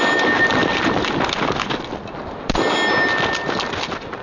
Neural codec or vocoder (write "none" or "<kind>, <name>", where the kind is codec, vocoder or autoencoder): none